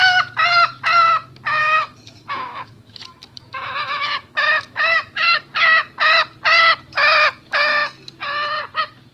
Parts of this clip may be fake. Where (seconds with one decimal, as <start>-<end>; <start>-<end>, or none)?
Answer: 1.6-5.4